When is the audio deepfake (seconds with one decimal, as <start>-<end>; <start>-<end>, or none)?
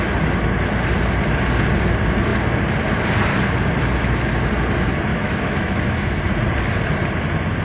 5.1-6.0